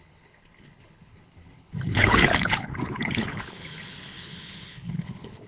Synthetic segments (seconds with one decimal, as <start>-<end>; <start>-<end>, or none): 0.0-5.5